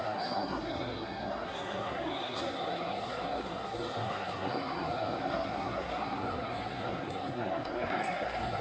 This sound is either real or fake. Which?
fake